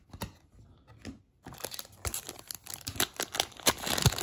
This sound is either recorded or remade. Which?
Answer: recorded